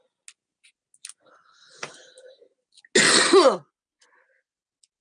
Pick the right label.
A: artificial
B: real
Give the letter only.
B